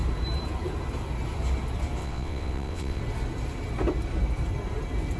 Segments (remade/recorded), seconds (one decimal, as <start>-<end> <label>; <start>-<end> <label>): 0.0-2.0 recorded; 2.0-3.0 remade; 3.0-5.2 recorded